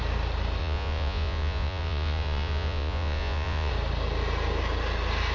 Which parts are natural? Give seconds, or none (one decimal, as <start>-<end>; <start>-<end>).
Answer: 0.0-0.6; 3.7-5.3